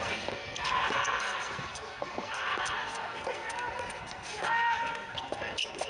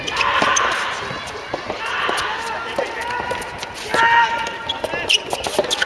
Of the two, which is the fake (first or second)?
first